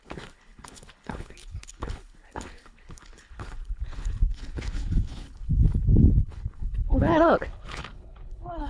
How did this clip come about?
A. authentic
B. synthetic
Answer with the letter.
B